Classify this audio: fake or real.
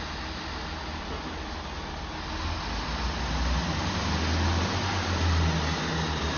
real